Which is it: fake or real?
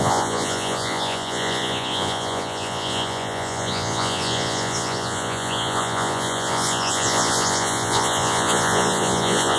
fake